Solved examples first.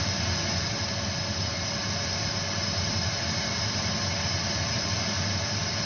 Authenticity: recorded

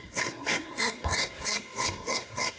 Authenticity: remade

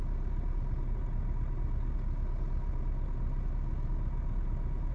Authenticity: recorded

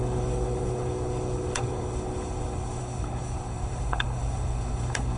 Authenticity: remade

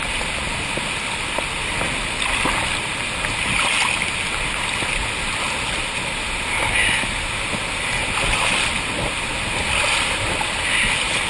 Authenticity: recorded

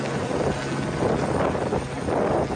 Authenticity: recorded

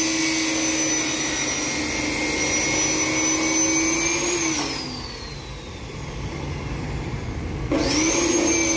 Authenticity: recorded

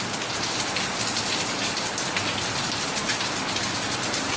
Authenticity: recorded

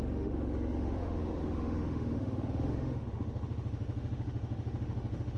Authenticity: remade